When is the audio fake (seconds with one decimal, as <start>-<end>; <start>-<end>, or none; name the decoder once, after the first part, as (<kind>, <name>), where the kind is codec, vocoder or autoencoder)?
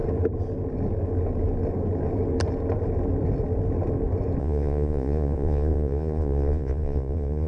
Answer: 4.4-7.5 (vocoder, Vocos)